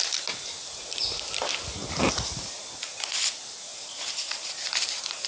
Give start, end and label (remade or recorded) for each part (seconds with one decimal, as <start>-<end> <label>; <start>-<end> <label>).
0.0-1.8 recorded; 1.8-2.9 remade; 2.9-3.7 recorded; 3.7-5.3 remade